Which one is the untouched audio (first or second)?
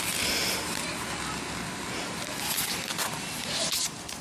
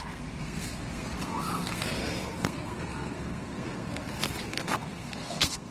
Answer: first